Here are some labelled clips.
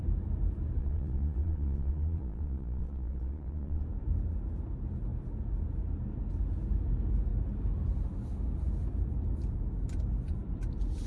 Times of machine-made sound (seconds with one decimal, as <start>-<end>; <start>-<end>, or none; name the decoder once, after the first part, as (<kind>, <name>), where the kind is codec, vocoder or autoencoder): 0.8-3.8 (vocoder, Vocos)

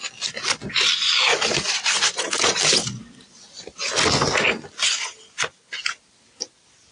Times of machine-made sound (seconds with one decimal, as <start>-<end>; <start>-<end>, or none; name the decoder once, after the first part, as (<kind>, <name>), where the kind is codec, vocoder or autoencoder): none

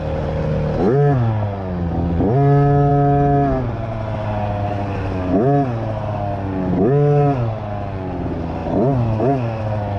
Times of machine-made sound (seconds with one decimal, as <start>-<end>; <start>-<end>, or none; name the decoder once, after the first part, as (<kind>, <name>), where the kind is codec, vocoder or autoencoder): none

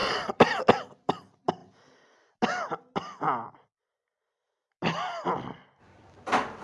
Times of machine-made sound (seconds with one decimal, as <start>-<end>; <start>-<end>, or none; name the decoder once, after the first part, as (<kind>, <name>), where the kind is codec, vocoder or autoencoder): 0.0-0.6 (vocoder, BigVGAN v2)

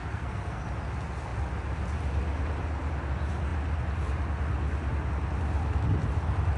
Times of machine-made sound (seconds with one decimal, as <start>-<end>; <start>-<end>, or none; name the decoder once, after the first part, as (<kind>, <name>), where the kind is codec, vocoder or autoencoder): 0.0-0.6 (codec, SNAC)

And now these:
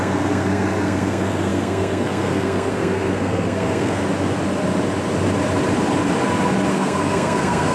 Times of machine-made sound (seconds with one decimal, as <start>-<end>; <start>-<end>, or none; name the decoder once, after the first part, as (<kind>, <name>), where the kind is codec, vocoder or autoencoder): 0.0-4.0 (codec, SNAC); 6.7-7.7